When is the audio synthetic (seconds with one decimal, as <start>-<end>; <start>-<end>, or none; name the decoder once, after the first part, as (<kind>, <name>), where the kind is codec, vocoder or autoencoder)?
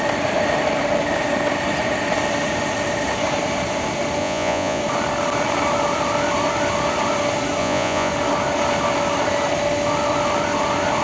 4.2-4.8 (vocoder, Vocos); 7.6-8.1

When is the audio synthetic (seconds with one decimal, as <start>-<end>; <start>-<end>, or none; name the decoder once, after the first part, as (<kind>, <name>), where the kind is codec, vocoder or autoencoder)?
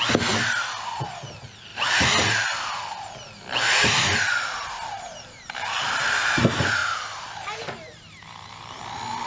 1.7-2.8 (vocoder, BigVGAN v2); 4.6-6.1; 6.8-8.8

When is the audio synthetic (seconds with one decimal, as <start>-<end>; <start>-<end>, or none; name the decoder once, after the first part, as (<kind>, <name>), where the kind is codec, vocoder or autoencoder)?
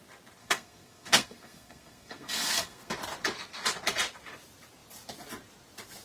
0.4-2.9 (codec, SNAC)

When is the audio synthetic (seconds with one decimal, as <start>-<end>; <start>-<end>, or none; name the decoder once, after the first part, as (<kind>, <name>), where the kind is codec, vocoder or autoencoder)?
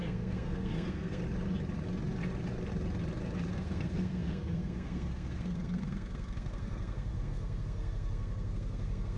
0.0-1.2 (codec, SNAC); 3.5-9.2